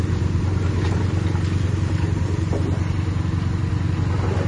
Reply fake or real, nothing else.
real